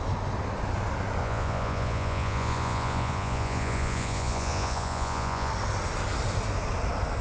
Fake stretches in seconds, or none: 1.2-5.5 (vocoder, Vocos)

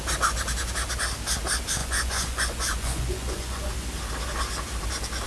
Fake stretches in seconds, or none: 1.8-3.7 (vocoder, Vocos)

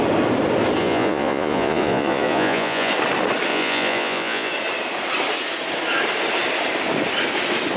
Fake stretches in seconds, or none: 0.8-2.9 (vocoder, Vocos); 3.5-4.5